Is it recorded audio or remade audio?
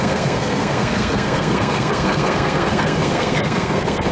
remade